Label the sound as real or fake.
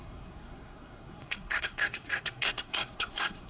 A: fake